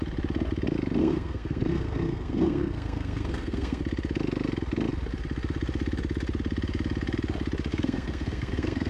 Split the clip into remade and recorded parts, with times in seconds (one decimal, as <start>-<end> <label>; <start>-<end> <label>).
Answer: 0.0-1.0 recorded; 1.0-3.8 remade; 3.8-7.7 recorded; 7.7-8.9 remade